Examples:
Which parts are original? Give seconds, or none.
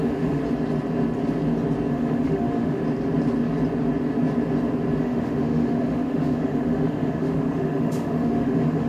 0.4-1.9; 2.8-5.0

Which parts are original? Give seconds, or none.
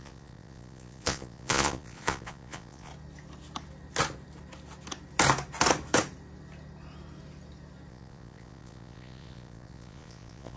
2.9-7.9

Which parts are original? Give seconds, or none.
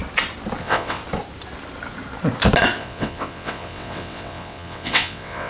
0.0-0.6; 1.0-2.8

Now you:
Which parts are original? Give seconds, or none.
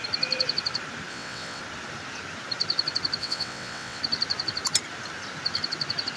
0.0-1.1; 1.6-3.2; 4.0-6.2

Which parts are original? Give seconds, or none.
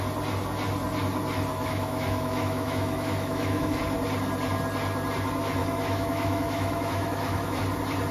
0.0-1.5; 3.8-5.6; 7.6-8.1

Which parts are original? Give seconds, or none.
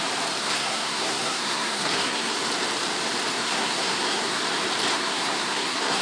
0.0-0.4; 2.4-3.3; 4.4-4.9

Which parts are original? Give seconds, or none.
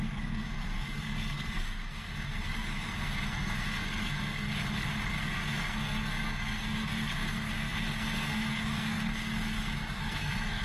4.5-5.1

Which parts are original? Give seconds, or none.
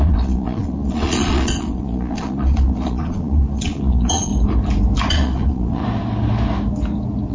4.3-5.1; 5.8-7.3